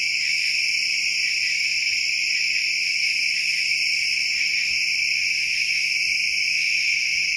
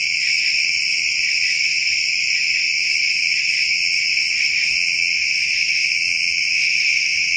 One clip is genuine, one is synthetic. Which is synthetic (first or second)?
second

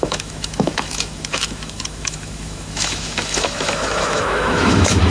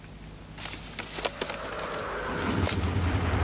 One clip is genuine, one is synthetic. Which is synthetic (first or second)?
first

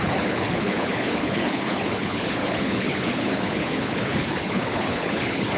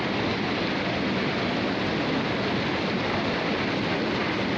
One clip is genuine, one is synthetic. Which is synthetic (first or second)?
first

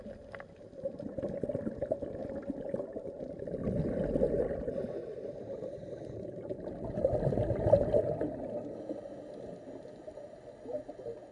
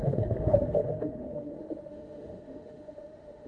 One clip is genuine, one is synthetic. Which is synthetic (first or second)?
second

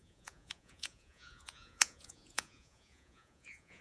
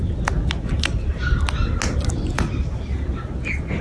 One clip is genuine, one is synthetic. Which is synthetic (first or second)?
first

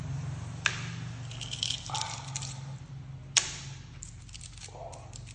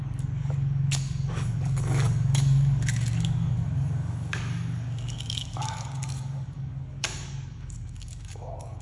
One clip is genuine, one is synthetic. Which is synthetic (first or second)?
second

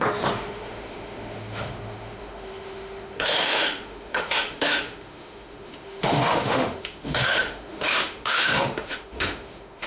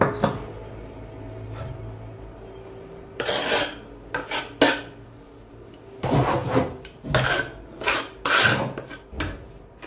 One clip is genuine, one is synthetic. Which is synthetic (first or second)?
first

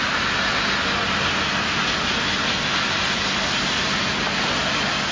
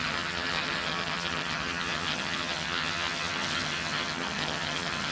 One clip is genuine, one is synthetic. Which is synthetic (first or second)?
second